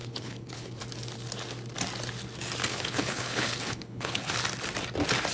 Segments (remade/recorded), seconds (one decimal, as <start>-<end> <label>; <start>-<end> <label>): 0.0-0.8 remade; 0.8-2.7 recorded; 2.7-4.3 remade; 4.3-5.3 recorded